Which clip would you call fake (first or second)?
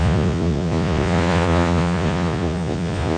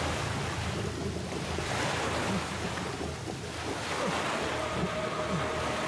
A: first